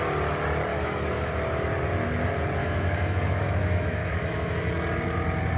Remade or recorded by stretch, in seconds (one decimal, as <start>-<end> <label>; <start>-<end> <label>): 0.0-0.7 recorded; 0.7-1.3 remade; 1.3-2.6 recorded; 2.6-4.7 remade; 4.7-5.6 recorded